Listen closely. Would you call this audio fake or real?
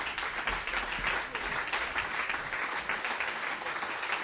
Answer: real